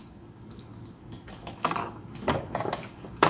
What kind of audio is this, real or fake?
fake